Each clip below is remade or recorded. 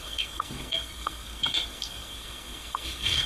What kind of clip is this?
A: remade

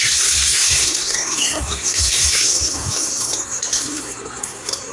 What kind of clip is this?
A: remade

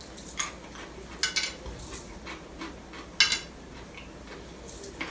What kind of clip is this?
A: recorded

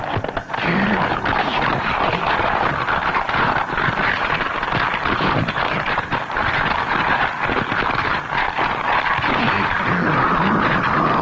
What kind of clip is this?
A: recorded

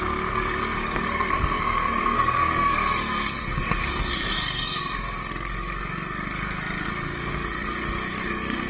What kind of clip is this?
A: remade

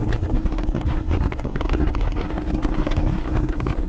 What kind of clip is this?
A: remade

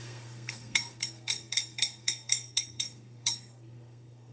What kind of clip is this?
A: remade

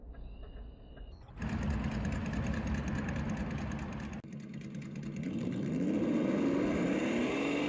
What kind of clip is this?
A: recorded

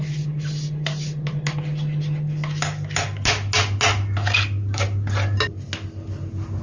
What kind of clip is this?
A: recorded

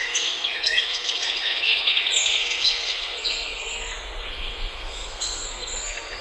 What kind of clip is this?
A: remade